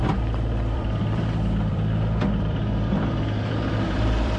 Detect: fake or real fake